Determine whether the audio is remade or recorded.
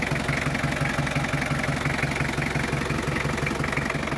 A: recorded